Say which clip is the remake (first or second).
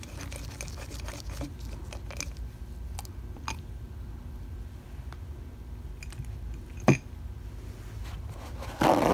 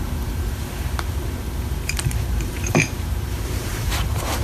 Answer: second